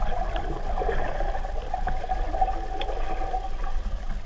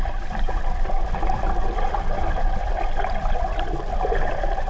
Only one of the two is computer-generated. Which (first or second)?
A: second